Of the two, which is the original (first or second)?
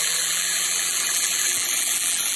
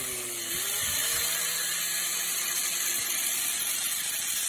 second